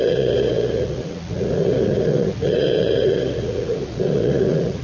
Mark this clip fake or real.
fake